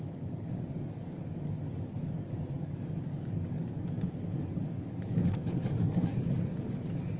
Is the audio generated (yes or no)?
yes